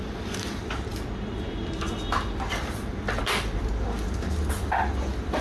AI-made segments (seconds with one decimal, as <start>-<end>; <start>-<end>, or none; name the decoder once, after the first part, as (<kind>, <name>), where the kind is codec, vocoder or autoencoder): 0.9-3.2 (vocoder, BigVGAN v2)